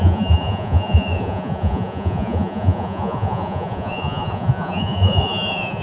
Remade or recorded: remade